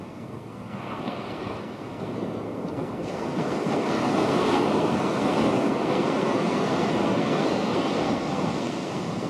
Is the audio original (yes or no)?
no